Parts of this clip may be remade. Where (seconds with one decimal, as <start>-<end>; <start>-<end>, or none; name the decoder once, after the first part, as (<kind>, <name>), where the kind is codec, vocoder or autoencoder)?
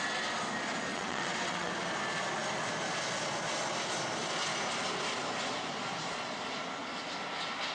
0.9-1.7 (vocoder, WaveNeXt)